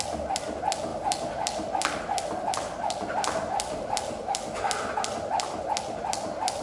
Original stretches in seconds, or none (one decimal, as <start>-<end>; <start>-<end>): 0.0-6.6